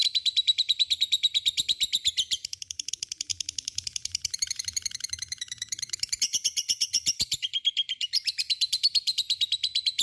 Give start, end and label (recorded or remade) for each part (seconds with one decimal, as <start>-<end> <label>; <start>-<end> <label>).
0.0-10.0 remade